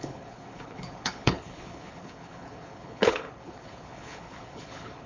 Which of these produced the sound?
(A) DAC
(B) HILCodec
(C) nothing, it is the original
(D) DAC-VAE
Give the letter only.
B